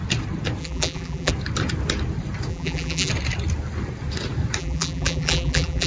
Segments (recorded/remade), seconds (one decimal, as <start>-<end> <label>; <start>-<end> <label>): 0.0-0.6 recorded; 0.6-1.3 remade; 1.3-2.5 recorded; 2.5-3.1 remade; 3.1-4.6 recorded; 4.6-5.9 remade

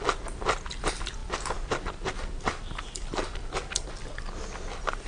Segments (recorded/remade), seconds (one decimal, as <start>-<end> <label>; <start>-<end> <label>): 0.0-5.1 recorded